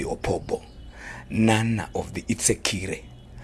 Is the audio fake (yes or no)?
no